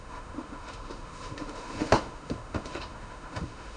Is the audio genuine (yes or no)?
no